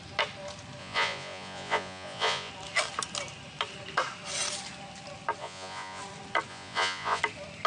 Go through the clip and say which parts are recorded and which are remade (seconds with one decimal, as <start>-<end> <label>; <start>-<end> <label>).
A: 0.0-0.8 recorded; 0.8-2.5 remade; 2.5-5.4 recorded; 5.4-6.0 remade; 6.0-6.5 recorded; 6.5-7.2 remade; 7.2-7.7 recorded